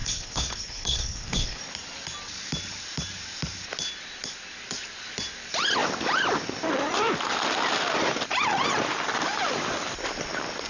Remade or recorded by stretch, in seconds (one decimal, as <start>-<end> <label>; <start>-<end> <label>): 0.0-1.6 remade; 1.6-10.7 recorded